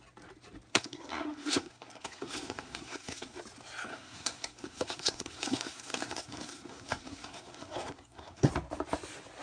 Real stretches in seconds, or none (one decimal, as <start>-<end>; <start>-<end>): 0.0-0.7; 3.4-3.9; 8.5-9.4